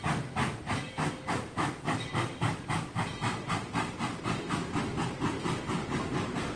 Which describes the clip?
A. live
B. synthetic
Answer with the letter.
A